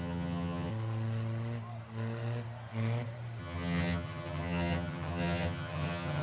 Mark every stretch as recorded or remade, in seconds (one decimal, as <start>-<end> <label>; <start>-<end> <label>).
0.0-0.7 remade; 0.7-3.4 recorded; 3.4-6.2 remade